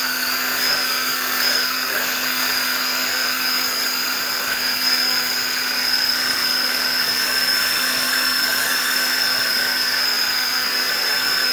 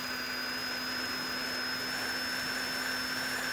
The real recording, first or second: second